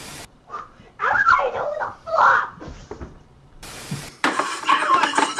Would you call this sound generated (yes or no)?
yes